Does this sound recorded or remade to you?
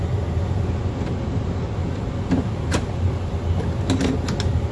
recorded